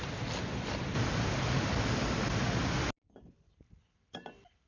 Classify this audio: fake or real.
real